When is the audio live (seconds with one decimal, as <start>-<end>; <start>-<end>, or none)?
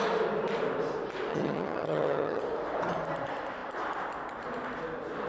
0.0-1.3; 2.4-5.3